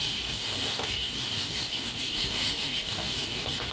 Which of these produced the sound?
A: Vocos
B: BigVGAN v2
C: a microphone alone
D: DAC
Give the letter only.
D